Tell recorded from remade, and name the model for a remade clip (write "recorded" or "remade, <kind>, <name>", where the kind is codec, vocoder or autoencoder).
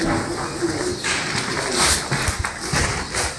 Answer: recorded